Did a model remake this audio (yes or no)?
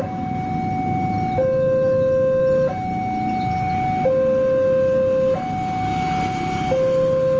no